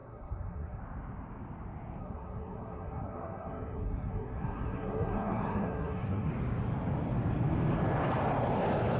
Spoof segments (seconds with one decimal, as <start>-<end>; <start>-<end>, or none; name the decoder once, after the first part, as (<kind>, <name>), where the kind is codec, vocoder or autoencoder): 0.0-0.8 (codec, SNAC); 2.0-6.3